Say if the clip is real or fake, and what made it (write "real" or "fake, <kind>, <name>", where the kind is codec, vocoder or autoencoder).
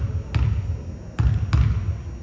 real